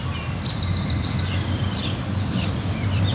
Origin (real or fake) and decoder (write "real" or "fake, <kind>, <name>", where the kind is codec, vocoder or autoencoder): fake, vocoder, BigVGAN v2